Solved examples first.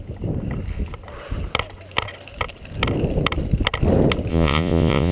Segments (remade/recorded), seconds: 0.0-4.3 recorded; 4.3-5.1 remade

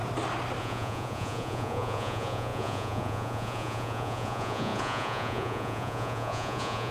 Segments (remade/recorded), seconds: 0.0-0.6 recorded; 0.6-6.9 remade

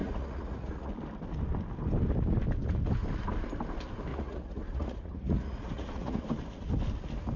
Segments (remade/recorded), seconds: 0.0-0.9 remade; 0.9-4.1 recorded; 4.1-6.2 remade; 6.2-7.4 recorded

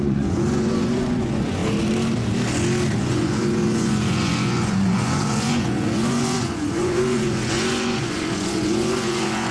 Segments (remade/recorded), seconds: 0.0-1.6 remade; 1.6-3.0 recorded; 3.0-9.5 remade

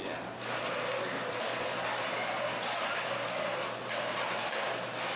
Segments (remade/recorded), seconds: 0.0-5.2 recorded

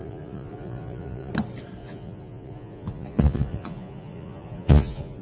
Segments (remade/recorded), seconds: 0.0-1.3 remade; 1.3-1.8 recorded; 1.8-5.2 remade